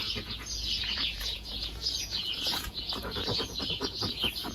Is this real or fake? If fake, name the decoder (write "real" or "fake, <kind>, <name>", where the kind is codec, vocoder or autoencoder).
fake, vocoder, Vocos